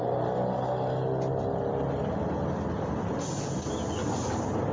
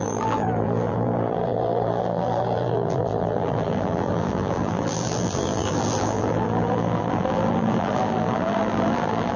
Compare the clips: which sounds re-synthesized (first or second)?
second